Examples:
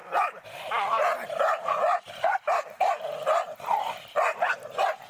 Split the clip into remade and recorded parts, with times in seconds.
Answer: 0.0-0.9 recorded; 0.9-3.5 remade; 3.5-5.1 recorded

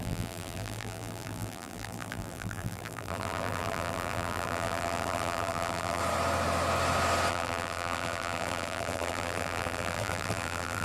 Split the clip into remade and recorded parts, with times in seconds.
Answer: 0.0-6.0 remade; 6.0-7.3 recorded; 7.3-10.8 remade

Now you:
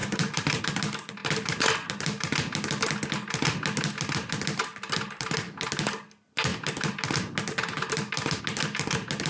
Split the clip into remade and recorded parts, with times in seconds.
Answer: 0.0-0.6 remade; 0.6-9.3 recorded

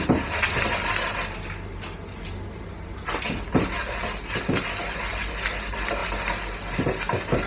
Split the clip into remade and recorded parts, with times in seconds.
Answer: 0.0-7.5 recorded

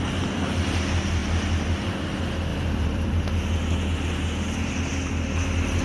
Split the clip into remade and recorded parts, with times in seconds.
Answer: 0.0-1.2 recorded; 1.2-1.9 remade; 1.9-2.5 recorded; 2.5-3.1 remade; 3.1-5.8 recorded

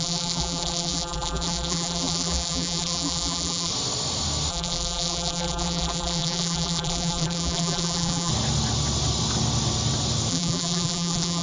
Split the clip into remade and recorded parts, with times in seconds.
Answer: 0.0-3.7 remade; 3.7-4.5 recorded; 4.5-8.3 remade; 8.3-10.3 recorded; 10.3-11.4 remade

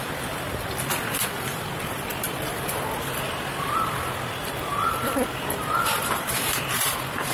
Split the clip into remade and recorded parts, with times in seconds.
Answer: 0.0-7.3 recorded

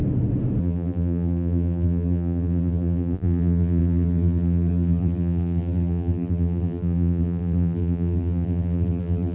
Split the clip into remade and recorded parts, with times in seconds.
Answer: 0.0-0.6 recorded; 0.6-9.3 remade